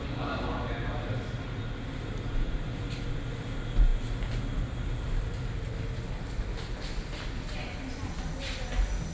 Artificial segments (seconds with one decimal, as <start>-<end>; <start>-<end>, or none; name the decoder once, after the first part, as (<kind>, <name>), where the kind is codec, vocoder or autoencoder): none